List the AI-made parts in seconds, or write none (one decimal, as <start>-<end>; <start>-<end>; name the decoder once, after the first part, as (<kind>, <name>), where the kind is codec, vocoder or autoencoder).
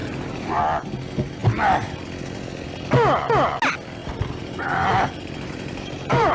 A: 0.0-0.6 (vocoder, BigVGAN v2); 4.0-6.3